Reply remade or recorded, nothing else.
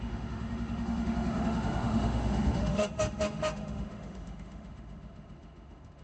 remade